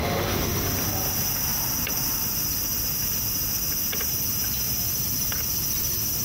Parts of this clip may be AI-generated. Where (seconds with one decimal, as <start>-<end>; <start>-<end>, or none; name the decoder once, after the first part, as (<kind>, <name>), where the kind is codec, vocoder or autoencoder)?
none